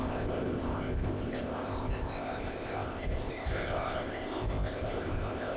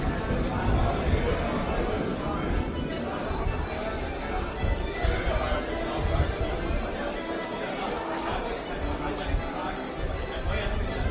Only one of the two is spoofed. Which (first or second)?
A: first